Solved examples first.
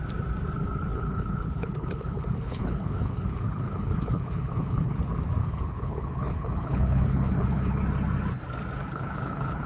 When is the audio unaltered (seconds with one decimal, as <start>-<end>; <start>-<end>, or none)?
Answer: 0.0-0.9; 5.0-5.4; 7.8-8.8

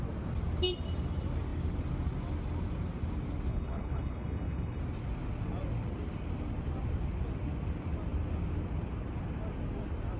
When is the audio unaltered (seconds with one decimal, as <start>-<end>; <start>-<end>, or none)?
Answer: 0.0-3.5; 4.8-10.2

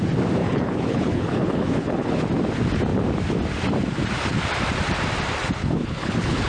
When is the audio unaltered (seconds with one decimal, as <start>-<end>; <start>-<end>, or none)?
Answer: 0.0-0.4; 2.2-5.6